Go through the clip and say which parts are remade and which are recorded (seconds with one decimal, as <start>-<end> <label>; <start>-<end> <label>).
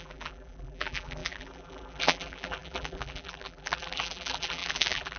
0.0-5.2 remade